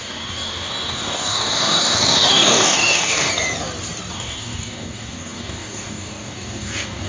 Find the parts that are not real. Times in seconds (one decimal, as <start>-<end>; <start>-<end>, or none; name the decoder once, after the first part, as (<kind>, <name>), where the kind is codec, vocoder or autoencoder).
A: 0.0-3.3 (codec, DAC); 4.1-7.1